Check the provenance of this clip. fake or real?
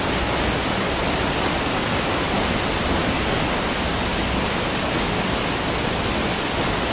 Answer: real